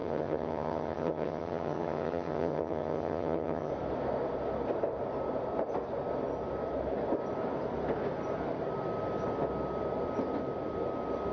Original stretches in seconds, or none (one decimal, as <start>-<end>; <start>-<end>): 3.7-11.3